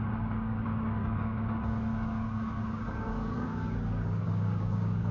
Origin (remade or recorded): remade